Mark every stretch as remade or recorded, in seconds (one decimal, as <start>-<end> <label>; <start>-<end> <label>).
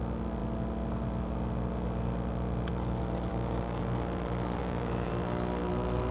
0.0-3.3 recorded; 3.3-3.8 remade; 3.8-4.6 recorded; 4.6-5.1 remade; 5.1-6.1 recorded